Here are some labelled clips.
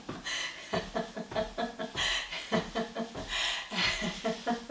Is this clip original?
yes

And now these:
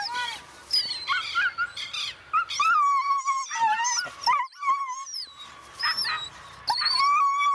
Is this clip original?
yes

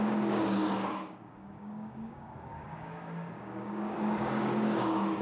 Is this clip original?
no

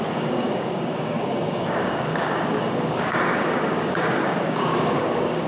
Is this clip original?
no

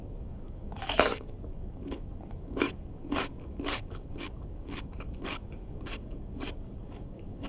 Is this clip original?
no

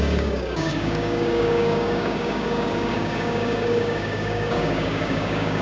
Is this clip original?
no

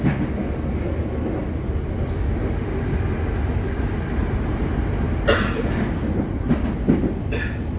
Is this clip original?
yes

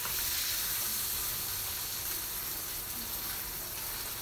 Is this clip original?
yes